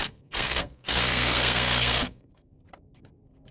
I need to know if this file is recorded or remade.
remade